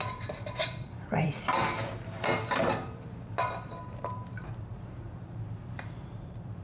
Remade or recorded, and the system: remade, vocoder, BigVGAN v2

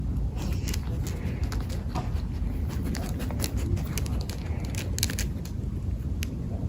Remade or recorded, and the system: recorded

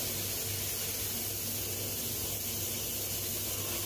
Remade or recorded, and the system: recorded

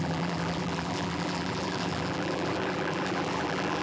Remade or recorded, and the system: remade, vocoder, BigVGAN v2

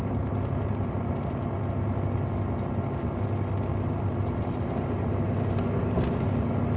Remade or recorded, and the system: recorded